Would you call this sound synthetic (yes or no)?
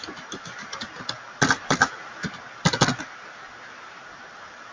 no